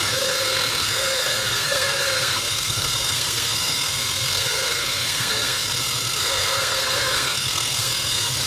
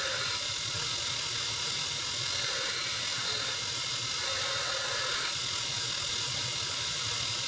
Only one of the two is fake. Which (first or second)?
first